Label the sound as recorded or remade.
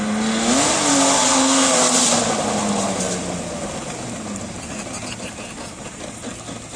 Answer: recorded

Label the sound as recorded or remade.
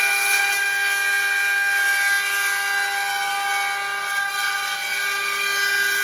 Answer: recorded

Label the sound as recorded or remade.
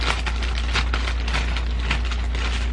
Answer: recorded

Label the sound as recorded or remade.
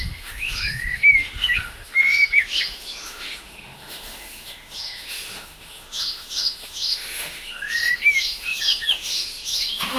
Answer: remade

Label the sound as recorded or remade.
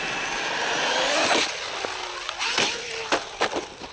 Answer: recorded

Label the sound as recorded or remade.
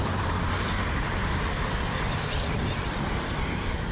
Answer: remade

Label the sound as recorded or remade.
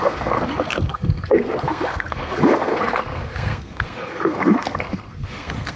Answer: remade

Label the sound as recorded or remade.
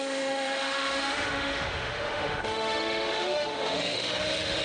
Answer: remade